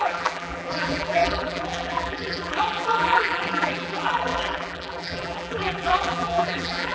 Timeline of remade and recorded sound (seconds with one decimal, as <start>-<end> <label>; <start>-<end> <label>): 0.0-6.9 remade